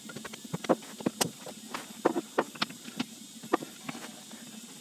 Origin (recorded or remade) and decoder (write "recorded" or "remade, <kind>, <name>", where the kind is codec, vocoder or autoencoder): recorded